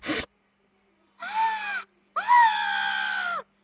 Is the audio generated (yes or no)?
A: no